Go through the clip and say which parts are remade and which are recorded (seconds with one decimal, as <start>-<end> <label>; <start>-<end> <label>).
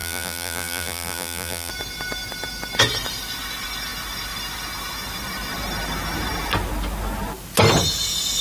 0.0-1.7 remade; 1.7-8.4 recorded